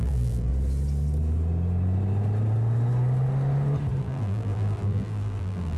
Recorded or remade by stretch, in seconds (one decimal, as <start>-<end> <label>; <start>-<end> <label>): 0.0-0.5 remade; 0.5-4.0 recorded; 4.0-5.8 remade